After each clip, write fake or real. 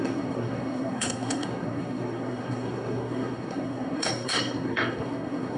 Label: fake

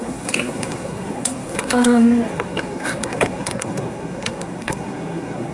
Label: fake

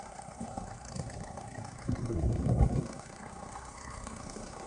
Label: fake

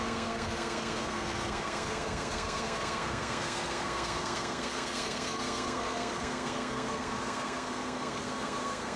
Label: fake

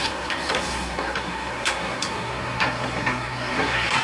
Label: fake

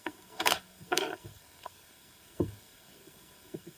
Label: fake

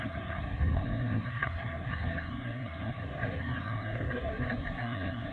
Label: fake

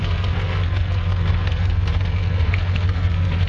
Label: fake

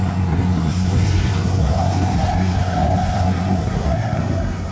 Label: fake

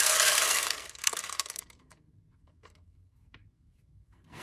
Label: fake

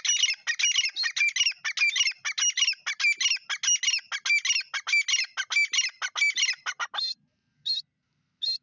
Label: real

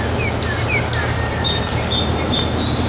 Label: real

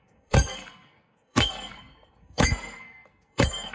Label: fake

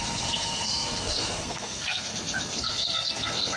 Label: fake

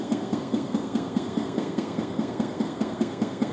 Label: fake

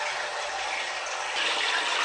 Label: real